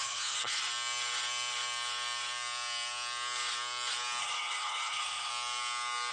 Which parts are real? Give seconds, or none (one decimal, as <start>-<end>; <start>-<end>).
0.6-4.2; 5.3-6.1

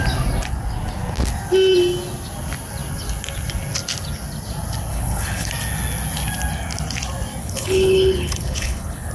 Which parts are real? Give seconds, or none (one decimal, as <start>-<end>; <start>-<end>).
0.0-4.9; 5.5-7.4

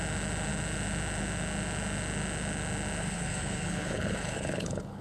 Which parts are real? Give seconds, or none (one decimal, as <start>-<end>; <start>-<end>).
0.0-3.0

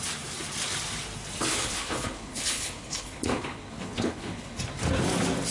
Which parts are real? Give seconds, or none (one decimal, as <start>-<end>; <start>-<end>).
0.0-1.5; 4.6-5.5

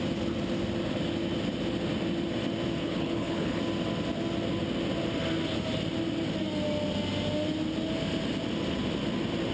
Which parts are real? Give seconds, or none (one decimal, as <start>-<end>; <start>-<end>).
0.0-2.8; 3.6-9.5

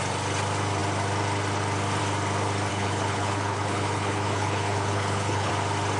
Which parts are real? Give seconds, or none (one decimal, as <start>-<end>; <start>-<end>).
0.0-2.7; 5.5-6.0

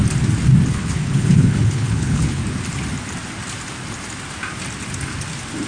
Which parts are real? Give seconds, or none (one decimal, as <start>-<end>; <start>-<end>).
0.0-0.7; 2.4-5.7